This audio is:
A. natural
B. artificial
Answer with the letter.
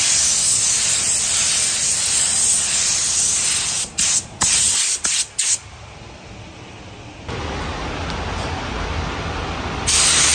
A